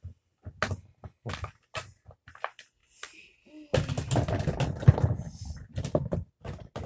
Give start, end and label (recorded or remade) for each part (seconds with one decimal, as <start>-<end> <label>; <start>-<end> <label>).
0.0-6.9 recorded